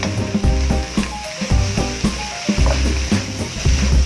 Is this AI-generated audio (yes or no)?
no